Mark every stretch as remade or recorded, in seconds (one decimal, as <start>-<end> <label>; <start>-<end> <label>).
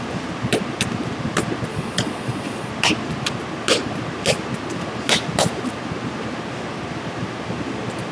0.0-1.7 recorded; 1.7-2.7 remade; 2.7-8.1 recorded